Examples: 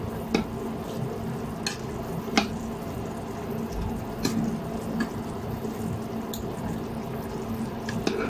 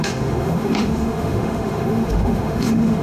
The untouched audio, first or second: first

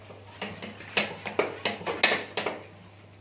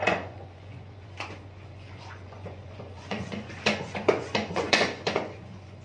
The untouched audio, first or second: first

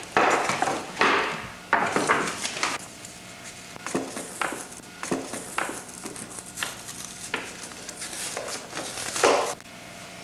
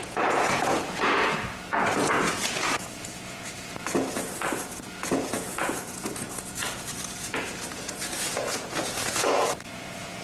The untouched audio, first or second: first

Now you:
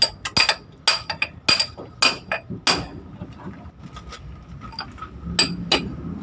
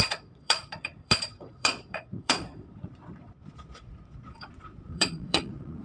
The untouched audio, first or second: first